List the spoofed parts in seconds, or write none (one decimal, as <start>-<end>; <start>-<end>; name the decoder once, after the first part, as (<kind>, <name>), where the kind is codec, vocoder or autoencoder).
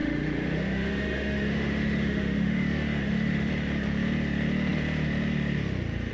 0.0-3.5 (autoencoder, DAC-VAE)